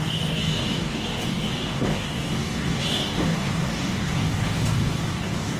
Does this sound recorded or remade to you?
remade